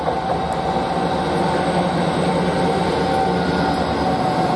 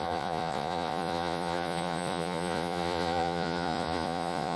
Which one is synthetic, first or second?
second